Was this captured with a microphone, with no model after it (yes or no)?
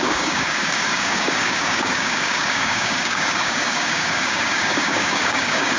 no